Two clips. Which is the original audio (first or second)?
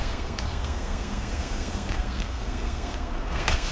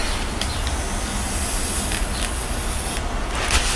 second